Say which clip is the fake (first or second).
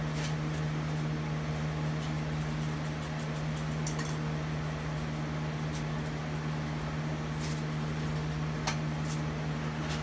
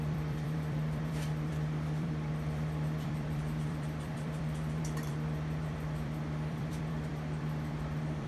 second